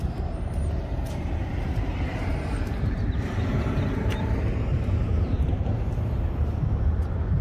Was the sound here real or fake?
fake